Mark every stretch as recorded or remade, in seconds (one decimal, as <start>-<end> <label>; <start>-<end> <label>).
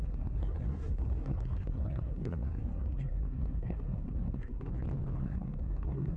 0.0-4.7 remade; 4.7-5.2 recorded; 5.2-6.2 remade